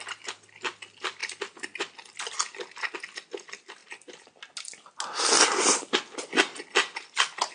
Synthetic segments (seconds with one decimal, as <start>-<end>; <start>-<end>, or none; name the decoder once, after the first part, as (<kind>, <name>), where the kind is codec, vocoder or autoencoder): none